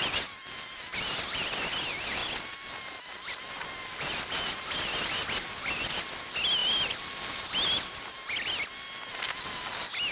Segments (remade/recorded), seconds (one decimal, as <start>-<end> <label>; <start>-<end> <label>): 0.0-10.1 recorded